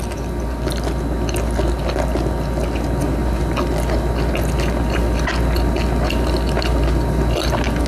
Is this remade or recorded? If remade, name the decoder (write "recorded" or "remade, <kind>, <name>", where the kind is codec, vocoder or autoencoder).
recorded